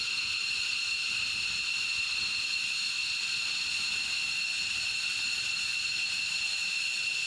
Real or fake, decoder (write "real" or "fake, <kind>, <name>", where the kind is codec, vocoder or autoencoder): real